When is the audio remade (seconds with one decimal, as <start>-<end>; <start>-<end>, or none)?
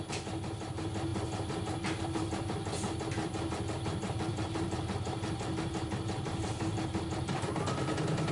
4.3-7.4